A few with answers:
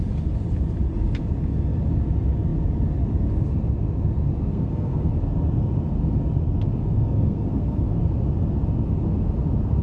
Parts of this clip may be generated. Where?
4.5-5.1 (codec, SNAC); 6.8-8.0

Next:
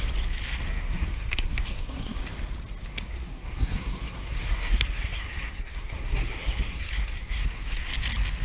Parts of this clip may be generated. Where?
0.7-2.2 (codec, SNAC); 2.9-7.9

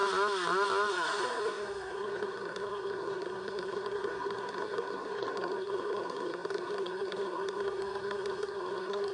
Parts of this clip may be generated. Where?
0.9-9.1 (codec, SNAC)

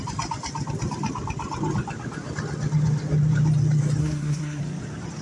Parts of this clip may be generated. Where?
4.0-4.6 (codec, SNAC)

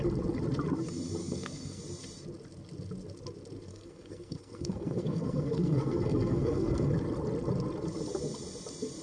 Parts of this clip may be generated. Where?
1.2-1.8 (codec, SNAC); 3.7-6.9